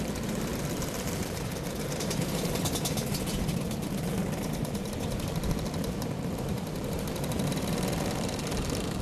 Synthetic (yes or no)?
yes